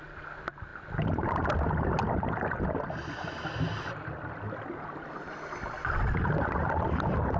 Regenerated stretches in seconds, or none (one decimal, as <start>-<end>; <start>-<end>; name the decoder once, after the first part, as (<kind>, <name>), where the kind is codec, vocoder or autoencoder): none